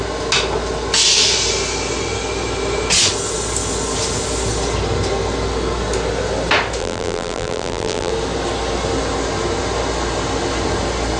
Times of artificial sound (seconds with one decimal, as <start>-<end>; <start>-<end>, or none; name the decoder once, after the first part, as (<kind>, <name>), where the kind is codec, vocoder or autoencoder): 6.8-8.1 (vocoder, BigVGAN v2)

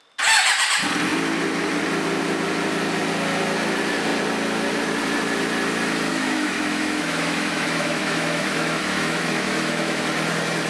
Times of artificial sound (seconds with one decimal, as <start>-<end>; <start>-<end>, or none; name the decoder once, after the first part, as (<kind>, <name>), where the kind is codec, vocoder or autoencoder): 6.1-10.0 (autoencoder, DAC-VAE)